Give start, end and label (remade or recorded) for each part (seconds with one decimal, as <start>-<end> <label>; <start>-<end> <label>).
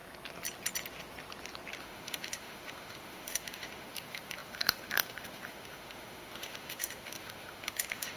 0.0-1.8 recorded; 1.8-8.2 remade